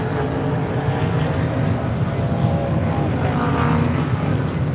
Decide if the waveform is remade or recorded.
recorded